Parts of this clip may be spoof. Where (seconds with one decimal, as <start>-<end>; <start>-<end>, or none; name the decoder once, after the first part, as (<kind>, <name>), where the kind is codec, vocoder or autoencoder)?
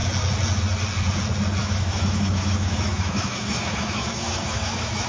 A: 1.6-5.1 (autoencoder, DAC-VAE)